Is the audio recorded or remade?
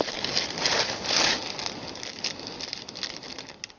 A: recorded